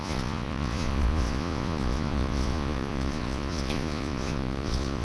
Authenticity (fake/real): fake